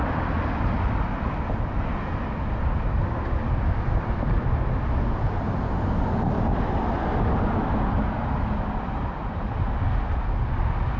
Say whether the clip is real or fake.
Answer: real